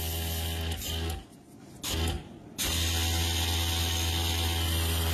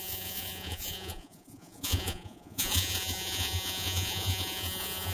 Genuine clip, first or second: first